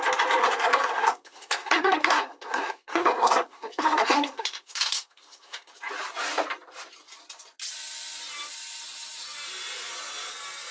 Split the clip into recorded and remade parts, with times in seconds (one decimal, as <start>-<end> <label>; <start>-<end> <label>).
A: 0.0-0.4 recorded; 0.4-5.7 remade; 5.7-10.7 recorded